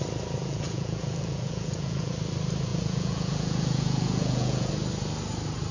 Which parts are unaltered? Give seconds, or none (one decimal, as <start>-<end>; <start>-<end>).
0.0-0.4; 2.1-2.7; 4.7-5.7